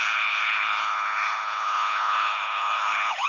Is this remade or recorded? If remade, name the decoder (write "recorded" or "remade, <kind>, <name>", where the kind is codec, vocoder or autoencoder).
remade, codec, HILCodec